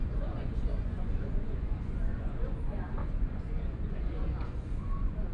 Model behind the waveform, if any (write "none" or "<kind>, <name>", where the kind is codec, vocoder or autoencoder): vocoder, Vocos